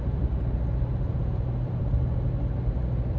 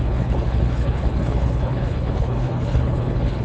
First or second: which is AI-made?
second